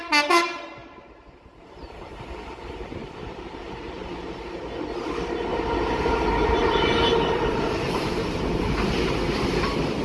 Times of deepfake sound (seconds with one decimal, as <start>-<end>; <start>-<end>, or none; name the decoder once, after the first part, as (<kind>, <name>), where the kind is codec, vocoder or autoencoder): 0.8-4.3 (vocoder, BigVGAN v2); 5.5-9.6